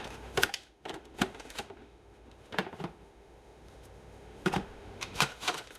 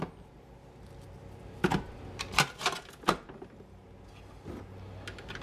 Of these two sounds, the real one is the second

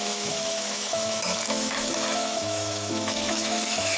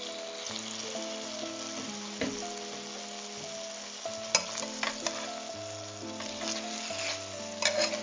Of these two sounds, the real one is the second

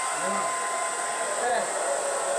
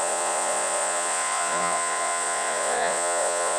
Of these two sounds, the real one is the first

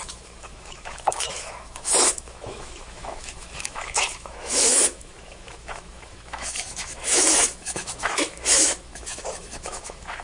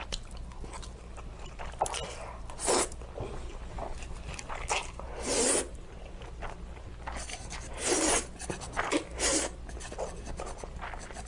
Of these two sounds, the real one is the second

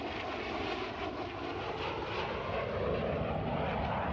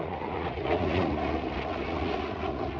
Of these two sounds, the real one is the first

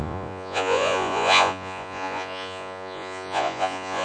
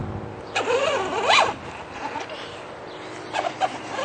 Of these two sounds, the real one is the second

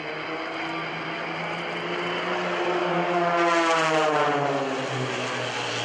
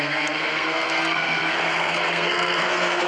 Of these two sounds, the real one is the first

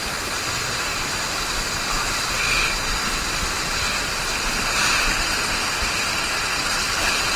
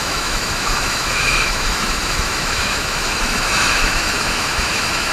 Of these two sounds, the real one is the first